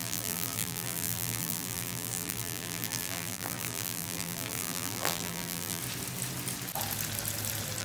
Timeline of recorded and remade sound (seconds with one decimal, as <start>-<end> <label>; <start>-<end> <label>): 0.0-5.8 remade; 5.8-7.8 recorded